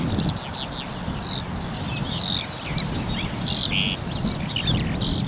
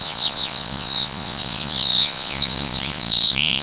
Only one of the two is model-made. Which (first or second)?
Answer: second